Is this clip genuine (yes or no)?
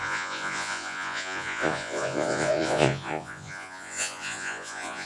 no